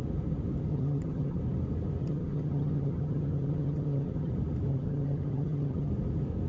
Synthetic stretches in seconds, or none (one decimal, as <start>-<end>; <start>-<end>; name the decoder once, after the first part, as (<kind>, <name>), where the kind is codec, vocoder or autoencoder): 0.7-1.4 (vocoder, HiFi-GAN); 2.0-4.3; 4.7-5.9